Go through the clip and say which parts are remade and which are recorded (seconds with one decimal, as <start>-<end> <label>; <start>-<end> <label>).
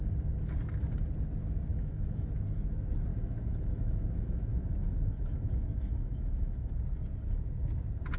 0.0-1.7 recorded; 1.7-2.3 remade; 2.3-3.1 recorded; 3.1-6.7 remade; 6.7-8.2 recorded